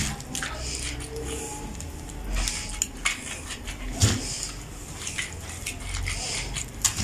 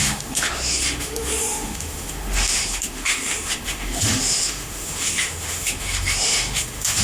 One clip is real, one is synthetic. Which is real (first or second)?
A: first